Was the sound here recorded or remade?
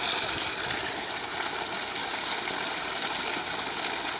recorded